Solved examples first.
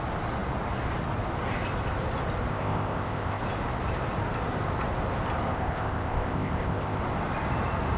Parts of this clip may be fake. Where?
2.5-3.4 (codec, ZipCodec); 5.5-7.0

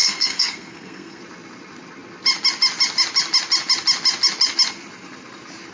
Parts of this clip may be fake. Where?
0.0-1.2 (codec, SNAC)

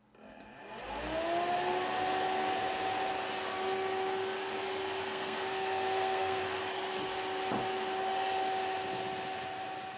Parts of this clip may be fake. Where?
5.0-6.4 (codec, SNAC)

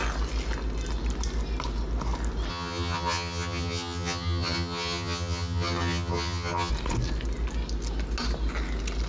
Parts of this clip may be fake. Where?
2.5-6.7 (vocoder, HiFi-GAN)

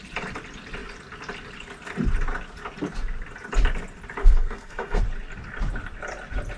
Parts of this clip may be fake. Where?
4.2-5.0 (codec, SNAC)